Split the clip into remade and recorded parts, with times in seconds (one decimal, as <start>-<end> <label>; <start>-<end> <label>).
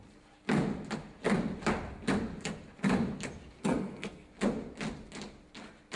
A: 0.0-3.6 recorded; 3.6-4.3 remade; 4.3-6.0 recorded